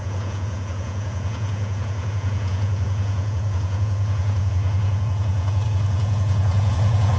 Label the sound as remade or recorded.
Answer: remade